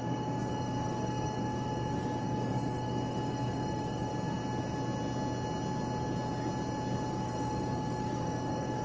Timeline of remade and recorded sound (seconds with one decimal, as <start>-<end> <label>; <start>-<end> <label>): 0.0-4.1 remade; 4.1-7.1 recorded; 7.1-8.8 remade